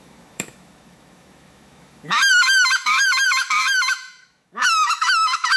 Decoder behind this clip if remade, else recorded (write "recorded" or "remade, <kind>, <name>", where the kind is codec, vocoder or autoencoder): remade, autoencoder, DAC-VAE